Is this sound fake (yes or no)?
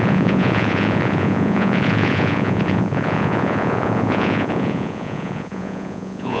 yes